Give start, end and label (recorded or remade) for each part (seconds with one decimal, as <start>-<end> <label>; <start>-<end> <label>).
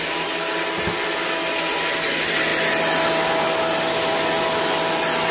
0.0-5.3 recorded